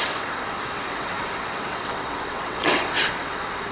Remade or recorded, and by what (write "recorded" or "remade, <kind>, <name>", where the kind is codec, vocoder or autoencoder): remade, vocoder, WaveNeXt